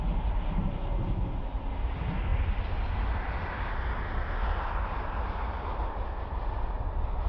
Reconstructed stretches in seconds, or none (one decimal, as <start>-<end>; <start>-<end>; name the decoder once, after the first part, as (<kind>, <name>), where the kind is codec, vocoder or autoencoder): none